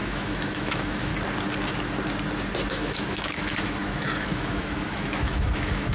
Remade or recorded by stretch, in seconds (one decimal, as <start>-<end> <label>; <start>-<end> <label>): 0.0-1.1 remade; 1.1-2.7 recorded; 2.7-5.9 remade